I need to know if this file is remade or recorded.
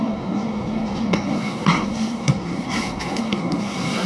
remade